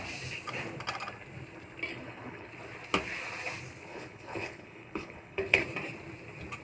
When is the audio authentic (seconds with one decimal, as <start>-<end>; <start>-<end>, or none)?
0.0-1.9; 2.5-3.9; 5.6-6.6

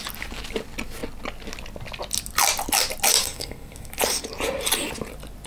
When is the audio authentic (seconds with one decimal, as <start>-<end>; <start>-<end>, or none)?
0.0-3.2; 3.9-5.5

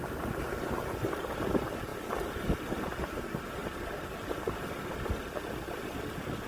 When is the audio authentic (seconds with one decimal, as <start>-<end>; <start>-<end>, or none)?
0.0-6.5

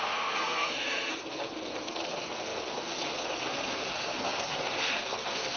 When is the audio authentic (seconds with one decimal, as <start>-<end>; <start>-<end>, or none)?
none

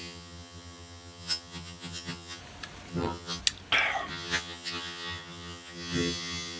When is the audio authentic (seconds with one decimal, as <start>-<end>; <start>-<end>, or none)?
2.4-2.9; 3.4-4.1

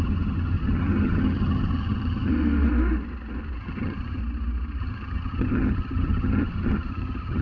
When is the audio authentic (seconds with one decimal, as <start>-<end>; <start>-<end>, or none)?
2.3-3.6; 4.2-4.8

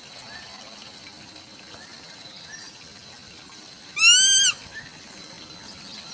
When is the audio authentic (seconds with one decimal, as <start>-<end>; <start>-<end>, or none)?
0.0-6.1